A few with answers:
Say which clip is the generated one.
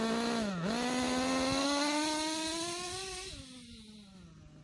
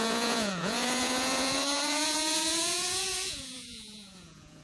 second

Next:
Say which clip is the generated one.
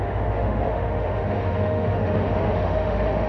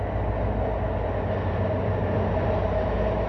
first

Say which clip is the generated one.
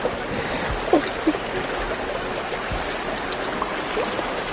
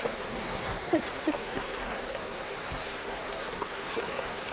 second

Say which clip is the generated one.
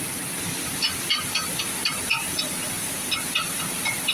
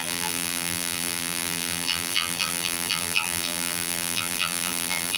second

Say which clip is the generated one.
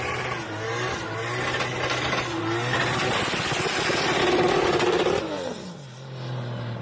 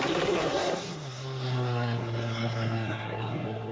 second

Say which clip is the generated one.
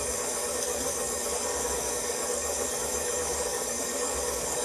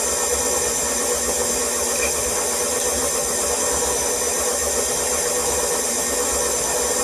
first